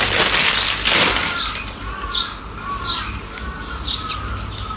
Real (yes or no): yes